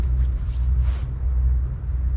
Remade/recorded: recorded